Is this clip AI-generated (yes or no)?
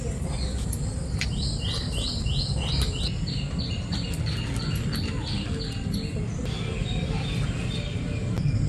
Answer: no